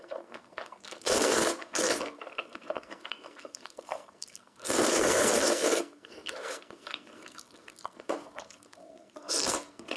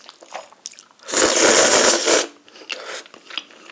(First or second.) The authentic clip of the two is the second